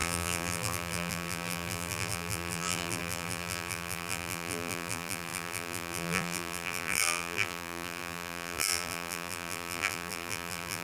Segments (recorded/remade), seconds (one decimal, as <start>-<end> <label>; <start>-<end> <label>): 0.0-10.8 remade